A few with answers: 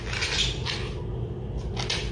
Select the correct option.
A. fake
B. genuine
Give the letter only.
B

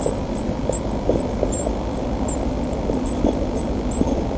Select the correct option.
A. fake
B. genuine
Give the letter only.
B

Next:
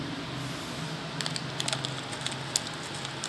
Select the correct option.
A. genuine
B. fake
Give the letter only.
A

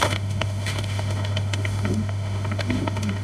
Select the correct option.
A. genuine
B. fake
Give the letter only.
B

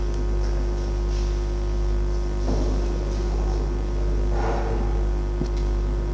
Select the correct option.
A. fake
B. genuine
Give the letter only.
B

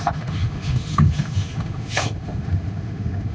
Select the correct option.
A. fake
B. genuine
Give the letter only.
A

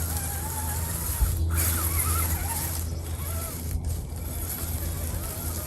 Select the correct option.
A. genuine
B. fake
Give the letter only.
A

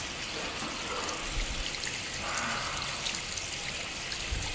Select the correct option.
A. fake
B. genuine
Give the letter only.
B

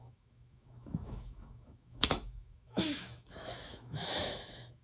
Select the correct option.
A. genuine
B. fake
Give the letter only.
B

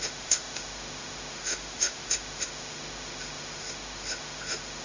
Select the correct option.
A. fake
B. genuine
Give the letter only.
A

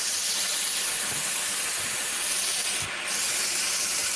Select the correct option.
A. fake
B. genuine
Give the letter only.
B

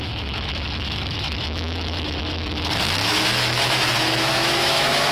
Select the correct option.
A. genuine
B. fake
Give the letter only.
B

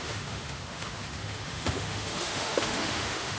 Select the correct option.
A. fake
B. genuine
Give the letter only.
A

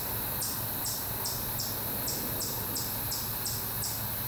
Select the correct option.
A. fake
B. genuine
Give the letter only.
B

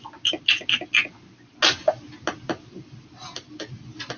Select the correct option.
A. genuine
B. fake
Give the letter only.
A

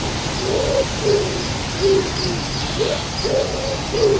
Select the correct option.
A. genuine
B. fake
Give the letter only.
A